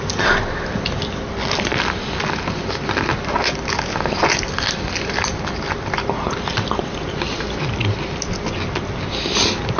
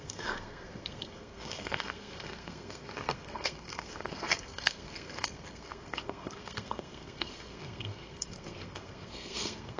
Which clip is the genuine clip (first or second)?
first